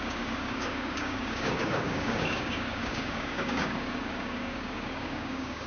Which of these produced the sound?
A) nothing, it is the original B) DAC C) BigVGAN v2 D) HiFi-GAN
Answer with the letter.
B